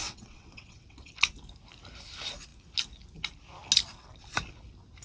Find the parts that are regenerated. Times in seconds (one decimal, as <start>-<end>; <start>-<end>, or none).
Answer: 0.0-1.1